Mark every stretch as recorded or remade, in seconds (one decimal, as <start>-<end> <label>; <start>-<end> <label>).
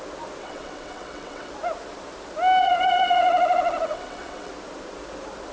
0.0-0.4 recorded; 0.4-1.5 remade; 1.5-2.6 recorded; 2.6-4.5 remade; 4.5-5.5 recorded